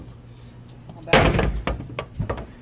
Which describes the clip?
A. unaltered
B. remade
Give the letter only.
A